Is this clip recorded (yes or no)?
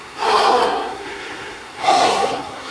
no